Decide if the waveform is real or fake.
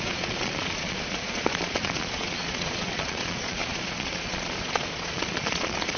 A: fake